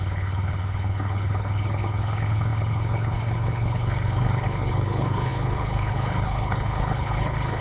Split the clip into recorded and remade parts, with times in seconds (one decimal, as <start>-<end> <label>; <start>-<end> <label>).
0.0-7.6 remade